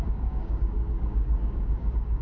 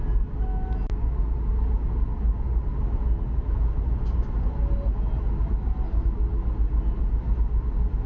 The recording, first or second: second